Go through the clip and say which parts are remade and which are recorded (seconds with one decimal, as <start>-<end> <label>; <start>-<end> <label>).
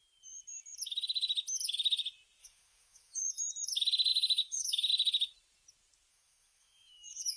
0.0-2.4 recorded; 2.4-3.2 remade; 3.2-4.1 recorded; 4.1-4.9 remade; 4.9-6.1 recorded; 6.1-7.4 remade